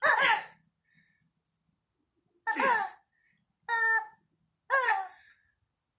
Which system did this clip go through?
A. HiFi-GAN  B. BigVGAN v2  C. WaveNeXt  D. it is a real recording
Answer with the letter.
D